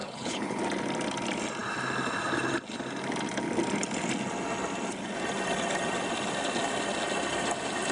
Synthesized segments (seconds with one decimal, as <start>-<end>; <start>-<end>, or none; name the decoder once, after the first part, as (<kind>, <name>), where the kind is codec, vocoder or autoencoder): 0.0-0.6 (codec, HILCodec)